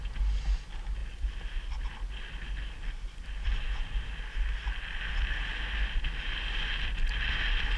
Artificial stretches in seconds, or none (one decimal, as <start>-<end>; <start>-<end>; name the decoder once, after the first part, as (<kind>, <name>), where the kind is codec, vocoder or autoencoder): none